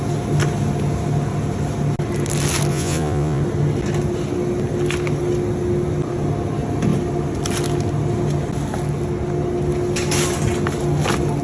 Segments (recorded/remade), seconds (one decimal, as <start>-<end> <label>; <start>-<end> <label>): 0.0-2.7 recorded; 2.7-3.4 remade; 3.4-11.4 recorded